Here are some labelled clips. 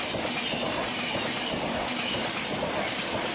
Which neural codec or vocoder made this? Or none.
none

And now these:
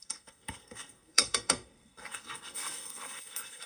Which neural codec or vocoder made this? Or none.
codec, SNAC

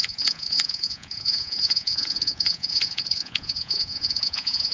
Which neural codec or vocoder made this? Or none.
vocoder, Vocos